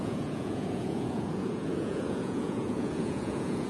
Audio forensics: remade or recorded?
remade